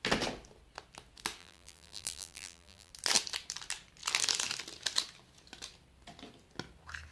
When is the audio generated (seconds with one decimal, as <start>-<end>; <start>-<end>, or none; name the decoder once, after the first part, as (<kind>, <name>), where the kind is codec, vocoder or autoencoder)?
1.4-2.9 (vocoder, BigVGAN v2)